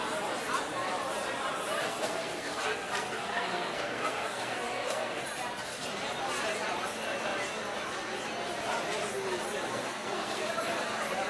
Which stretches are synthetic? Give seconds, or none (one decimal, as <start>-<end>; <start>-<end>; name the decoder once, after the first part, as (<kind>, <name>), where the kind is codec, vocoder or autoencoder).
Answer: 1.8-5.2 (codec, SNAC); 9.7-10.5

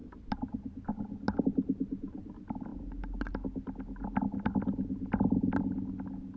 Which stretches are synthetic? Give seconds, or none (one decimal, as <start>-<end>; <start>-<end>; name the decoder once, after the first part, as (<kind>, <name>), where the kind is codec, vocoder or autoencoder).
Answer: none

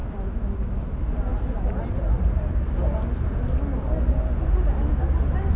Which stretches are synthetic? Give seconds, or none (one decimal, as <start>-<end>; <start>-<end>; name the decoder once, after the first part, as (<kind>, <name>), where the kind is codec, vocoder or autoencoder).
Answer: none